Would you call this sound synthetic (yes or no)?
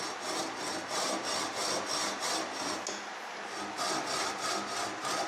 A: no